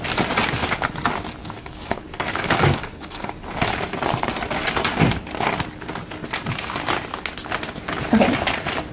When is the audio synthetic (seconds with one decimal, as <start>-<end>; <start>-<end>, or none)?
1.4-3.3